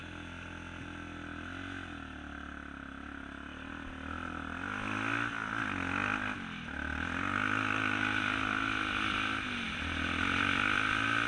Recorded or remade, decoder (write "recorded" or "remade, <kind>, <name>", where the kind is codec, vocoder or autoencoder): recorded